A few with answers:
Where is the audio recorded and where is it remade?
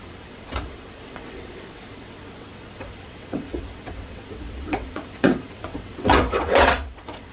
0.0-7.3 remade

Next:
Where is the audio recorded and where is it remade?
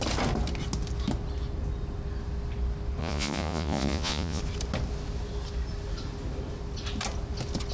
0.0-3.0 recorded; 3.0-4.4 remade; 4.4-7.7 recorded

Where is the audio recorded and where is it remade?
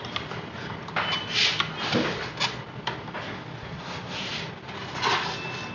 0.0-3.6 recorded; 3.6-4.3 remade; 4.3-5.7 recorded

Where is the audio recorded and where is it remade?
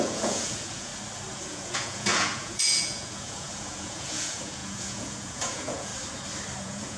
0.0-0.9 remade; 0.9-1.4 recorded; 1.4-5.9 remade; 5.9-6.6 recorded; 6.6-7.0 remade